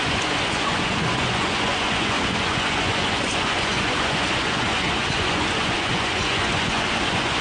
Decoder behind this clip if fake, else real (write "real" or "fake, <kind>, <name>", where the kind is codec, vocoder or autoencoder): fake, vocoder, Vocos